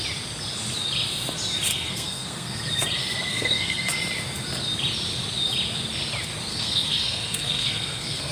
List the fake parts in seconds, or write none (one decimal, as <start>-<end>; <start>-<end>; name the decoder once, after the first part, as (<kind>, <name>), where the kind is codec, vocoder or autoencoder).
1.7-2.6 (codec, SNAC); 3.3-3.9; 6.5-8.3